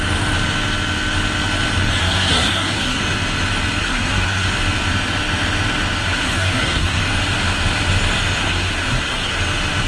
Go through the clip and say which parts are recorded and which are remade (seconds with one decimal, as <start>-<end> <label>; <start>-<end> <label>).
0.0-2.0 recorded; 2.0-3.0 remade; 3.0-3.8 recorded; 3.8-4.5 remade; 4.5-6.0 recorded; 6.0-7.0 remade; 7.0-8.4 recorded; 8.4-9.4 remade; 9.4-9.9 recorded